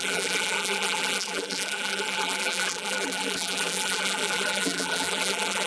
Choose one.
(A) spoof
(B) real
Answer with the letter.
A